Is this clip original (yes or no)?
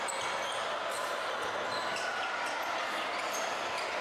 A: yes